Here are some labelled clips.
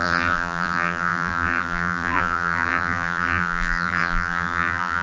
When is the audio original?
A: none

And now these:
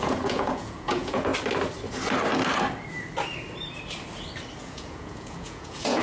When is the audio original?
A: 1.3-4.6

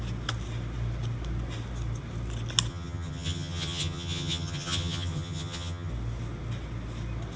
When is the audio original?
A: 0.0-2.7; 5.9-7.4

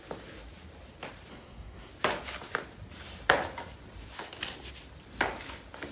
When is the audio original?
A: 0.0-1.3; 1.9-5.9

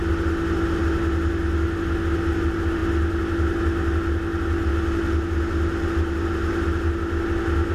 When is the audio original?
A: 0.0-7.7

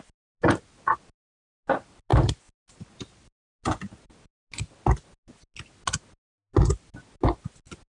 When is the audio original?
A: 0.0-7.9

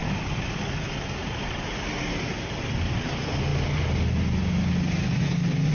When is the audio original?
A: 0.6-5.7